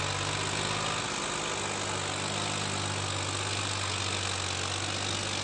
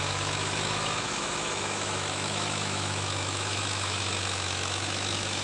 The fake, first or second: second